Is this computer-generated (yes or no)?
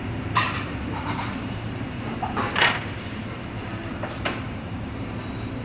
yes